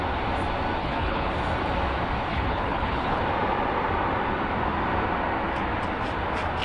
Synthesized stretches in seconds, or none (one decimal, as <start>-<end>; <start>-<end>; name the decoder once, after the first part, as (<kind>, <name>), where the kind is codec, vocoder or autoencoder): 0.8-1.3 (codec, HILCodec); 2.3-3.2